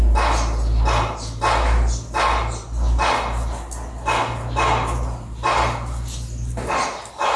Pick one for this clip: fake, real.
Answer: real